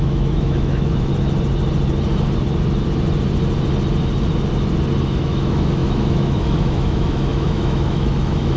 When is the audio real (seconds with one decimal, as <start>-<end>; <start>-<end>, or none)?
1.1-5.0